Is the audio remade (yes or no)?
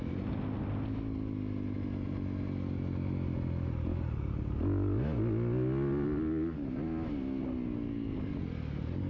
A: no